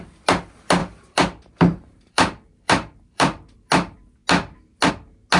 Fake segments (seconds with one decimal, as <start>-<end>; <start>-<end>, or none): 0.8-3.7